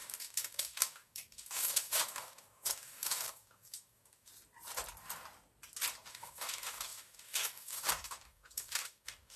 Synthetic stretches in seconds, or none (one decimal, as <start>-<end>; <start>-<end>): 0.0-4.3; 6.1-9.4